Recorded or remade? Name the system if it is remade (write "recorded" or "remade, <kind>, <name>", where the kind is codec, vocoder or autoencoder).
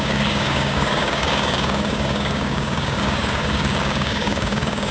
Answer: remade, codec, DAC